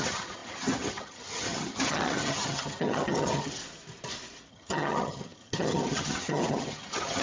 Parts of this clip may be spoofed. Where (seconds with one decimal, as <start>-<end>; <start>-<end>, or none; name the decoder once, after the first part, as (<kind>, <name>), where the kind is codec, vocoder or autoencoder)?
0.0-3.6 (vocoder, HiFi-GAN); 4.5-7.2